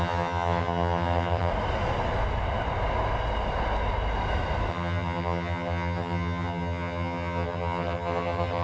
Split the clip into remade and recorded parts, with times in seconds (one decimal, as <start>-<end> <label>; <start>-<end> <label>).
0.0-1.5 remade; 1.5-4.7 recorded; 4.7-8.6 remade